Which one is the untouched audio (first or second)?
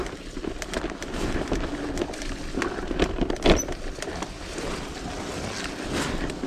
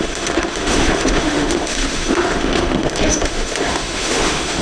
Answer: first